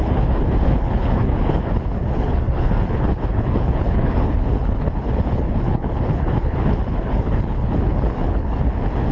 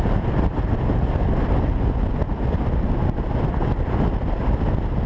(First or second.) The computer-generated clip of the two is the first